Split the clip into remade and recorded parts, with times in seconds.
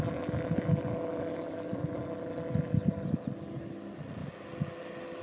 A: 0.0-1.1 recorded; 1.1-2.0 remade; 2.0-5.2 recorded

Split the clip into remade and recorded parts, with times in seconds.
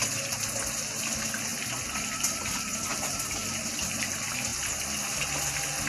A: 0.0-2.9 recorded; 2.9-3.8 remade; 3.8-5.9 recorded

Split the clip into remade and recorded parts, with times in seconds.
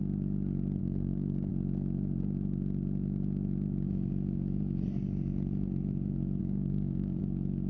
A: 0.0-0.8 recorded; 0.8-1.5 remade; 1.5-6.4 recorded; 6.4-7.2 remade; 7.2-7.7 recorded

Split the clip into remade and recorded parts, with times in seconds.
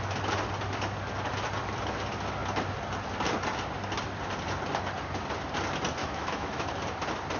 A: 0.0-6.0 recorded; 6.0-6.7 remade; 6.7-7.4 recorded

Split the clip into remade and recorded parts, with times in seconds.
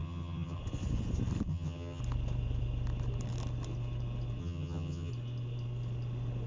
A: 0.0-0.6 remade; 0.6-1.5 recorded; 1.5-2.0 remade; 2.0-4.4 recorded; 4.4-5.1 remade; 5.1-6.5 recorded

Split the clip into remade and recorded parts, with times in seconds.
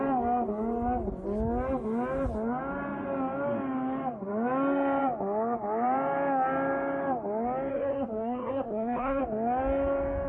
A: 0.0-7.7 recorded; 7.7-9.2 remade; 9.2-10.3 recorded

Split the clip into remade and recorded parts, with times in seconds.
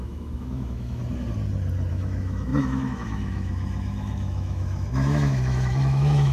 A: 0.0-1.0 remade; 1.0-1.9 recorded; 1.9-6.3 remade